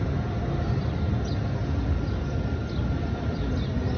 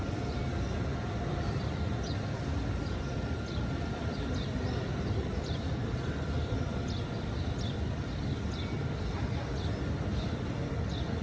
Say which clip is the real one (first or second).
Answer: first